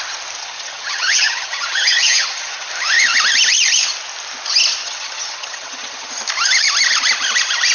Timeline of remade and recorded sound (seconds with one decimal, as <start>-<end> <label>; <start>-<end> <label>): 0.0-0.4 recorded; 0.4-2.7 remade; 2.7-4.8 recorded; 4.8-6.1 remade; 6.1-7.7 recorded